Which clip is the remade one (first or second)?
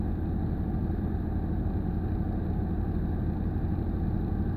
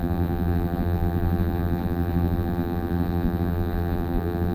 second